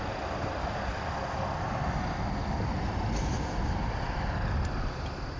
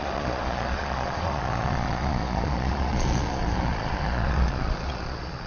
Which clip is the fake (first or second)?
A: second